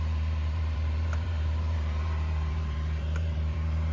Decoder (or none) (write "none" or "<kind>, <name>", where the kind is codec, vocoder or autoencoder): vocoder, BigVGAN v2